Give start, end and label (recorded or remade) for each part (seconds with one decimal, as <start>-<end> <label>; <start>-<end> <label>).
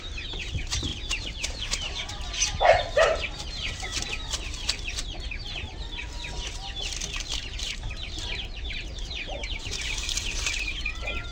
0.0-3.9 remade; 3.9-7.4 recorded; 7.4-11.3 remade